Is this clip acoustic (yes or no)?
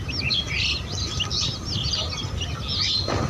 yes